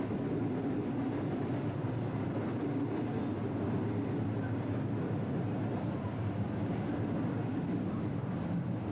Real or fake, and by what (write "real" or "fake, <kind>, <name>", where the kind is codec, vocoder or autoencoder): real